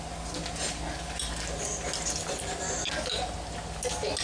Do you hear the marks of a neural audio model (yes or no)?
no